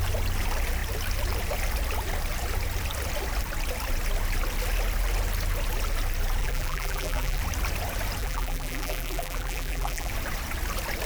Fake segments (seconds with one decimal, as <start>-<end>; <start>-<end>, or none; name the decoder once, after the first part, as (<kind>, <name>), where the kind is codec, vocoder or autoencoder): 6.4-7.4 (vocoder, BigVGAN v2); 8.2-10.1